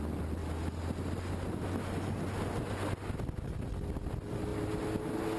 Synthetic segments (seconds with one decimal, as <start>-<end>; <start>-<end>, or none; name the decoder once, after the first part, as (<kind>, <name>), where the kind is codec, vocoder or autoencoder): none